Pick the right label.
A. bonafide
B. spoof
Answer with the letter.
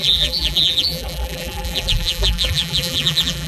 B